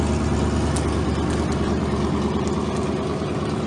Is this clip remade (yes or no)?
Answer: no